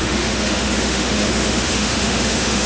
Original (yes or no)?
no